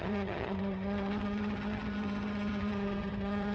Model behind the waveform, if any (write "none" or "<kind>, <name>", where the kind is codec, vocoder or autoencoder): vocoder, HiFi-GAN